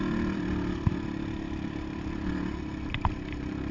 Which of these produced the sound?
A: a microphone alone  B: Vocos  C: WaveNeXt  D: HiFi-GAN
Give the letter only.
A